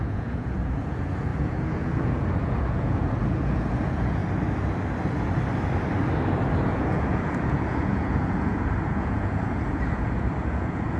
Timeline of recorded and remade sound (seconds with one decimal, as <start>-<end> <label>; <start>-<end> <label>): 0.0-4.2 remade; 4.2-6.7 recorded; 6.7-11.0 remade

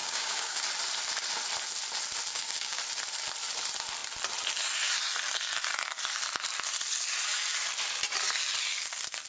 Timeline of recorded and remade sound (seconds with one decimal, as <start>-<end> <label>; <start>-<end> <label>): 0.0-0.6 remade; 0.6-2.3 recorded; 2.3-2.8 remade; 2.8-9.3 recorded

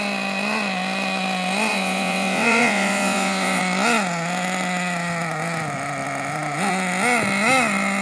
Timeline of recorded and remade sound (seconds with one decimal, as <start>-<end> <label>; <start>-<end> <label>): 0.0-1.7 recorded; 1.7-3.6 remade; 3.6-8.0 recorded

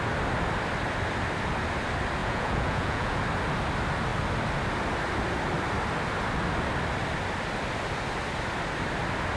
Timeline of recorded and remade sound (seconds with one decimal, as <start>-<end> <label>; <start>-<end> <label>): 0.0-2.2 recorded; 2.2-3.2 remade; 3.2-9.4 recorded